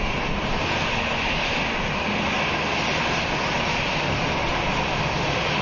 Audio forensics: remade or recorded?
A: recorded